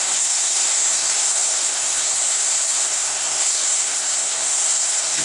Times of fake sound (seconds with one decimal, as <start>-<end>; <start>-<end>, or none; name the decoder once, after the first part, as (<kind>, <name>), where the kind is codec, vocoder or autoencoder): 0.0-5.2 (codec, SNAC)